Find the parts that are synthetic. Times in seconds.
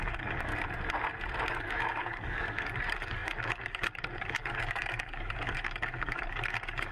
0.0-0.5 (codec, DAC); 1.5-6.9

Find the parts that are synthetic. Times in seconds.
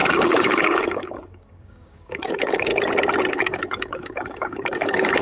0.0-2.7 (codec, DAC); 3.3-5.2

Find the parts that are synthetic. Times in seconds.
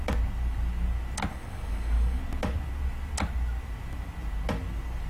1.3-2.2 (codec, DAC)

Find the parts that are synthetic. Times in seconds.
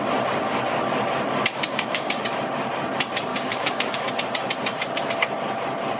1.5-2.2 (codec, DAC); 3.3-4.1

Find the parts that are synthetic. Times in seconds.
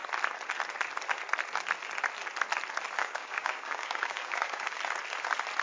3.0-4.8 (codec, DAC)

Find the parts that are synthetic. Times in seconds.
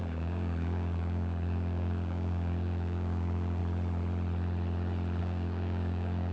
0.0-3.6 (codec, DAC); 5.2-6.3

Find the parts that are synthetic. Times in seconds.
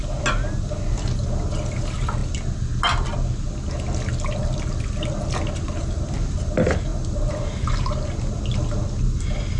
none